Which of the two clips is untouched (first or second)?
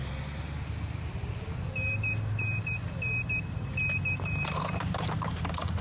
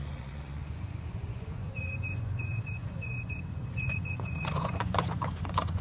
first